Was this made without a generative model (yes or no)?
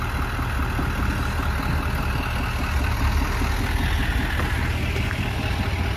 yes